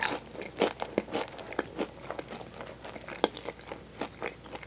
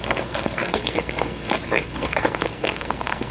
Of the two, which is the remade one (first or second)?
second